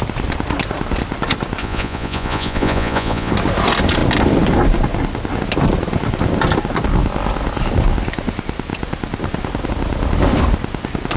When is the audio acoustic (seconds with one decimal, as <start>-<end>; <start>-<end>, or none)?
0.0-1.6; 3.3-11.2

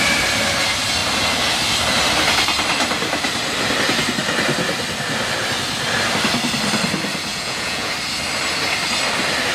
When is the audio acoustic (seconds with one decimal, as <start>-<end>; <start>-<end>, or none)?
0.0-7.3; 7.9-9.5

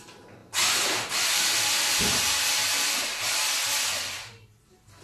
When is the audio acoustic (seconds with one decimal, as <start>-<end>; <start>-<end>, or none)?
0.0-0.4; 2.4-5.0

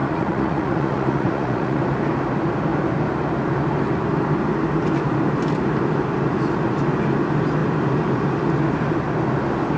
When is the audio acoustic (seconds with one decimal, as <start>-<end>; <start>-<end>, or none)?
1.8-9.8

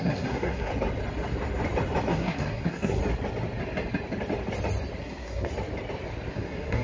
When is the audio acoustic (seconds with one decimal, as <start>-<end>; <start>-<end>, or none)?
0.7-2.1; 3.0-5.0; 5.5-6.3